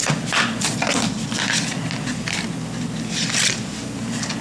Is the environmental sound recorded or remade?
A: recorded